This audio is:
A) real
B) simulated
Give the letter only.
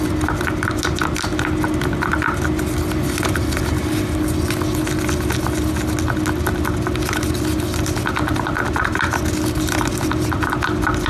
A